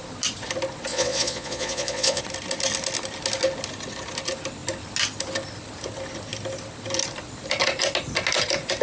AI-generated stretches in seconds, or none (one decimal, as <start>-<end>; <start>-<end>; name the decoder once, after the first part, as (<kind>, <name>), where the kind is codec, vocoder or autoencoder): 0.9-2.2 (vocoder, Vocos)